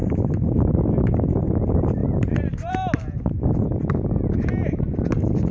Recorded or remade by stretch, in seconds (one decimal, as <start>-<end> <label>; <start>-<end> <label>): 0.0-0.7 remade; 0.7-2.0 recorded; 2.0-2.7 remade; 2.7-5.5 recorded

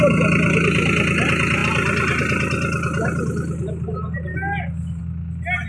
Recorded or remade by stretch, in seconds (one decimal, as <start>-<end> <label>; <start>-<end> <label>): 0.0-5.7 recorded

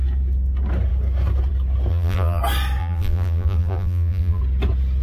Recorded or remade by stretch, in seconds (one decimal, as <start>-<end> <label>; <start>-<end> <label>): 0.0-1.9 recorded; 1.9-2.4 remade; 2.4-2.8 recorded; 2.8-4.4 remade; 4.4-5.0 recorded

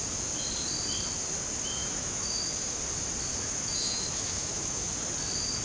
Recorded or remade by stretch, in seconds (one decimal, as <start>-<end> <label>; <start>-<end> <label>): 0.0-1.8 recorded; 1.8-2.8 remade; 2.8-3.3 recorded; 3.3-4.9 remade; 4.9-5.6 recorded